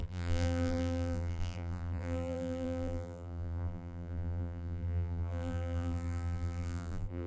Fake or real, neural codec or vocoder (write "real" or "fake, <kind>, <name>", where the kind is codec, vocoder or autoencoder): fake, vocoder, BigVGAN v2